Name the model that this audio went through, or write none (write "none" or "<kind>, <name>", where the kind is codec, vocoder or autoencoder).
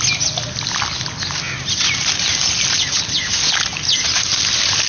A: none